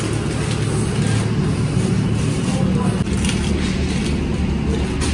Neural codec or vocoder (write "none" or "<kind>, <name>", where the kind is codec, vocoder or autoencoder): none